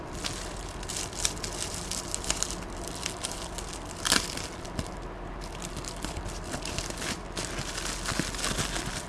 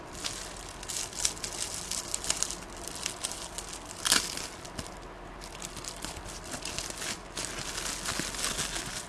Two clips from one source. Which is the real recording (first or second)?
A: second